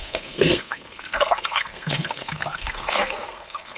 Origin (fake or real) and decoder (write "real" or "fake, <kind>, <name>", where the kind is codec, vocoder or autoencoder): fake, codec, SNAC